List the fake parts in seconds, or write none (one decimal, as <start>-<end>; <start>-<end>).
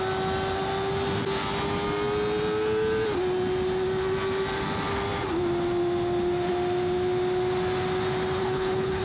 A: 8.4-9.0